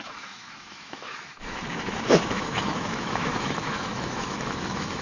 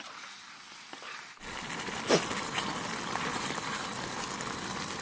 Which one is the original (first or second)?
second